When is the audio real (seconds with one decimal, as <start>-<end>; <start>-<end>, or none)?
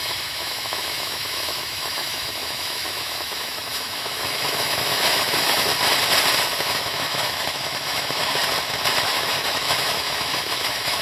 5.7-6.6; 8.4-9.0